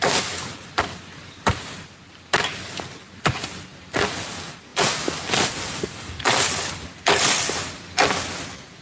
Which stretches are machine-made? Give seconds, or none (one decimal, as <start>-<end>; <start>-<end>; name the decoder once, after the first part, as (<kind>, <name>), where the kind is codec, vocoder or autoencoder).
none